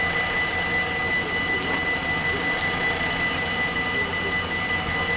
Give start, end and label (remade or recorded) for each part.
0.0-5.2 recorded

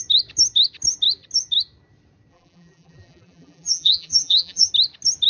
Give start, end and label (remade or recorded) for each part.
0.0-2.3 recorded; 2.3-4.7 remade; 4.7-5.3 recorded

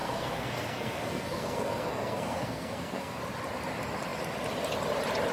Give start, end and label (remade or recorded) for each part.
0.0-3.2 remade; 3.2-5.3 recorded